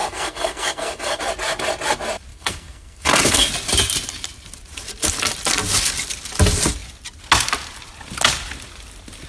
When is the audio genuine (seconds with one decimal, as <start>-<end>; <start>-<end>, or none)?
1.2-2.3; 3.5-9.3